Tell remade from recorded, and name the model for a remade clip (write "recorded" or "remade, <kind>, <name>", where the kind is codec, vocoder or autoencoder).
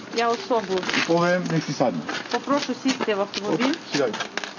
recorded